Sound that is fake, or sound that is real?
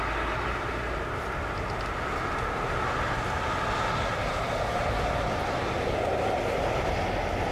real